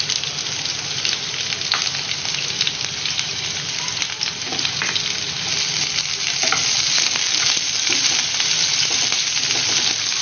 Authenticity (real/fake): real